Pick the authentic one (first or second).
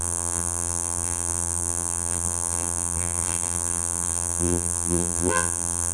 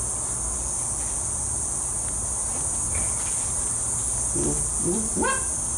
second